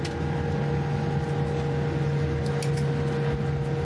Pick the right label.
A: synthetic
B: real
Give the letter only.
B